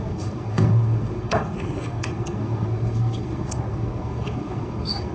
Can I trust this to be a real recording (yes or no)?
no